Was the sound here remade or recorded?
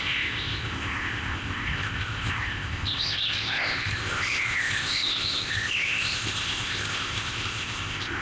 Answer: remade